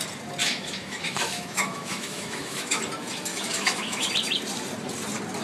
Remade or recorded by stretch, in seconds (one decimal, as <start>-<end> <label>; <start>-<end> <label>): 0.0-0.4 recorded; 0.4-2.8 remade; 2.8-3.3 recorded; 3.3-4.1 remade; 4.1-5.4 recorded